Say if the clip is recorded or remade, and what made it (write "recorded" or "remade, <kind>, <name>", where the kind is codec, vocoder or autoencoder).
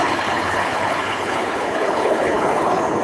remade, codec, HILCodec